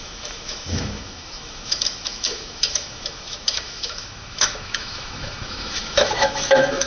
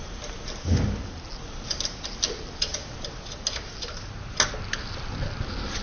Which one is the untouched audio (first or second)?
second